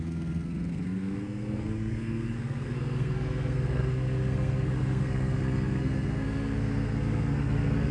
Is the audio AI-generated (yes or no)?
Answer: yes